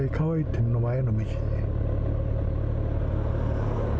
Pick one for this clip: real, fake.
real